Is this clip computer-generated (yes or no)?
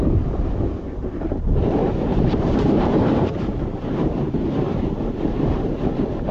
yes